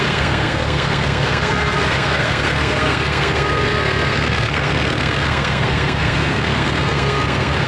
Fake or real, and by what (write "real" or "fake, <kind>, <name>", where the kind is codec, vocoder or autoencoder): fake, codec, SNAC